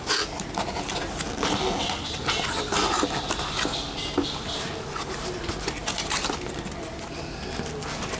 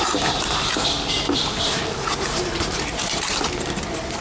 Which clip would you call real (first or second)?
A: first